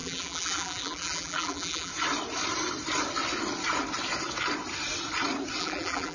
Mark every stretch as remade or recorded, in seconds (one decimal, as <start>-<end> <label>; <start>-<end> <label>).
0.0-1.9 remade; 1.9-5.6 recorded; 5.6-6.1 remade